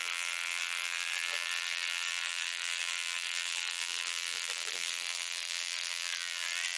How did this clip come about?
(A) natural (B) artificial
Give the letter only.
B